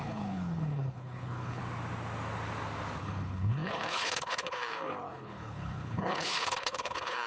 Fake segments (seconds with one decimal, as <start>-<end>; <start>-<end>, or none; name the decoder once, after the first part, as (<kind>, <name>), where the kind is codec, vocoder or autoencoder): 0.0-1.6 (codec, HILCodec); 3.0-7.3